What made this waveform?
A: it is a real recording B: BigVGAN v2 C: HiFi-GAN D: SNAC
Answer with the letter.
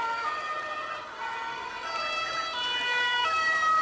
B